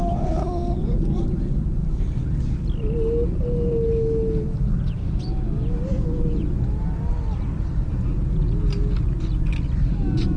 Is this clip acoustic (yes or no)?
yes